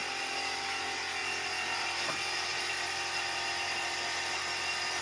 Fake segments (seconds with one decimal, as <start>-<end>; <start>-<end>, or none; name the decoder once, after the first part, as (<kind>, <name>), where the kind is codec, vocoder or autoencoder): 0.0-0.6 (vocoder, BigVGAN v2); 1.2-2.1; 2.5-4.4